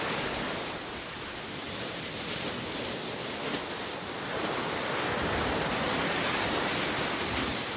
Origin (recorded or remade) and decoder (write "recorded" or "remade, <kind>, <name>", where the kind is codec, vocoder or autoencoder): recorded